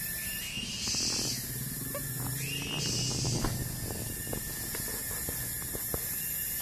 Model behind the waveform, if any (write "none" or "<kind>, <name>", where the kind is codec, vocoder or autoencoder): none